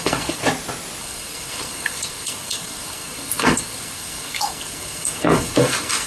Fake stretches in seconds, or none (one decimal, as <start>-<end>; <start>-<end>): 0.0-0.4; 1.0-6.1